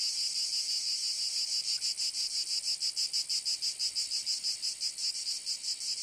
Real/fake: real